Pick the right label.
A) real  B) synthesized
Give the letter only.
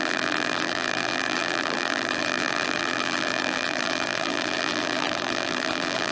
B